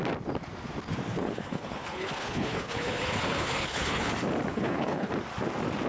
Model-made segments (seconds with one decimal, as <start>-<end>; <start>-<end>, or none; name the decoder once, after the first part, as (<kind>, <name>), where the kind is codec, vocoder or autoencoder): 1.1-4.1 (codec, HILCodec); 4.5-5.1